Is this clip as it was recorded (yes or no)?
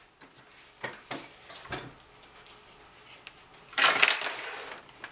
yes